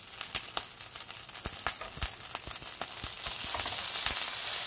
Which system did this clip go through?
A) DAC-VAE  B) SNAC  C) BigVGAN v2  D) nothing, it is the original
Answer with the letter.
D